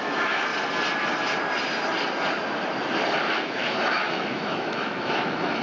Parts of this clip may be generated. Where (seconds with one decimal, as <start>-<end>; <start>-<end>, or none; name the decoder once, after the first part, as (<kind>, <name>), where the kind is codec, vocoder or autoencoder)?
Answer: 0.0-0.5 (autoencoder, DAC-VAE); 3.3-5.6